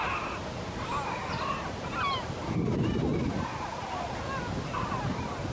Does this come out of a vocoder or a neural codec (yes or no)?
no